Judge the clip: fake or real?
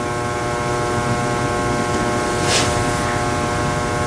real